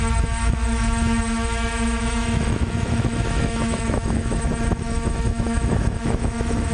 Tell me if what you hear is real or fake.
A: fake